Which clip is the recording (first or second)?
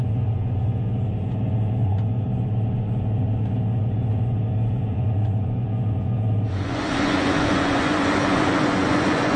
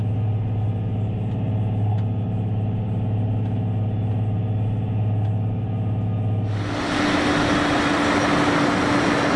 second